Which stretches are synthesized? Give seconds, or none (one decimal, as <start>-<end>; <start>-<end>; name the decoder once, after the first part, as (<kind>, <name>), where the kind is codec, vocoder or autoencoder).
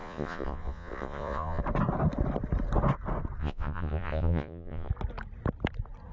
0.0-1.6 (vocoder, Vocos); 3.4-4.9